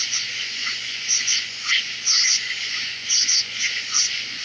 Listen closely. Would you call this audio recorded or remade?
remade